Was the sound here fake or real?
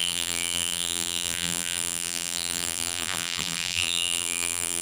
fake